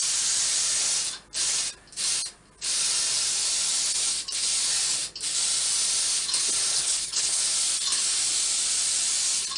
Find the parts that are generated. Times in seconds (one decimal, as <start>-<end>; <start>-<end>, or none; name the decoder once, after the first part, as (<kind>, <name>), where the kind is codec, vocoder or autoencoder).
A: 6.7-7.4 (codec, HILCodec)